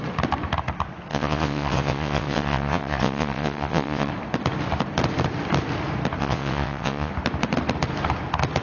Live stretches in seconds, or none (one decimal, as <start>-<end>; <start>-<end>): 0.0-1.1; 4.1-6.2; 7.1-8.6